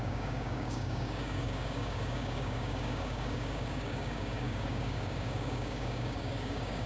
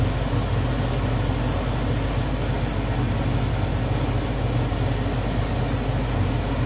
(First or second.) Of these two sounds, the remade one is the first